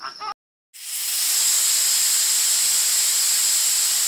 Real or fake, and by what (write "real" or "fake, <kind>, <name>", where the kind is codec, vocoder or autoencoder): real